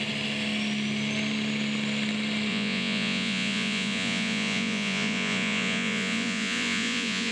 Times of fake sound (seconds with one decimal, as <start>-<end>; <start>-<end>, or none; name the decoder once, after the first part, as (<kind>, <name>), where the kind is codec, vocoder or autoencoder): 2.5-7.3 (vocoder, Vocos)